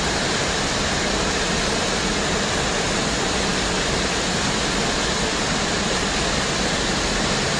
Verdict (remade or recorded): recorded